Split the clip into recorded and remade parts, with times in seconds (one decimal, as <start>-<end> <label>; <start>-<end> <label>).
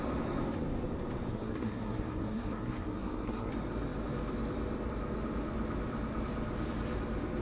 0.0-1.3 recorded; 1.3-3.5 remade; 3.5-7.4 recorded